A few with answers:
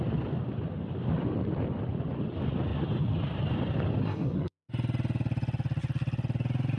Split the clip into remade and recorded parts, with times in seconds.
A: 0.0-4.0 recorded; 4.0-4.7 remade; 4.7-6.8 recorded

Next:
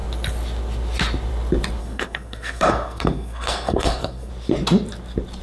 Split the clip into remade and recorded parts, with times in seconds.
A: 0.0-1.8 recorded; 1.8-4.3 remade; 4.3-5.4 recorded

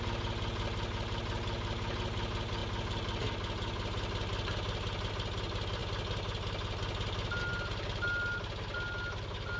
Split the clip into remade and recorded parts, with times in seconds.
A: 0.0-9.6 recorded

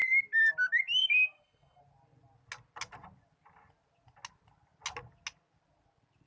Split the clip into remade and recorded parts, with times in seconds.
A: 0.0-1.0 recorded; 1.0-1.8 remade; 1.8-6.3 recorded

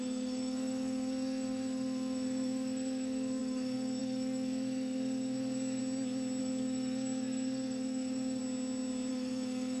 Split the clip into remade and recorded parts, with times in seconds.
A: 0.0-5.8 remade; 5.8-6.4 recorded; 6.4-8.4 remade; 8.4-9.1 recorded; 9.1-9.8 remade

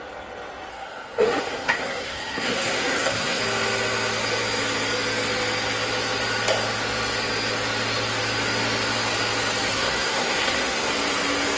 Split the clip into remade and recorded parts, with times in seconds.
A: 0.0-0.7 recorded; 0.7-3.4 remade; 3.4-9.7 recorded; 9.7-10.9 remade; 10.9-11.6 recorded